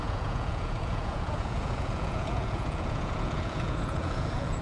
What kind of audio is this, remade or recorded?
remade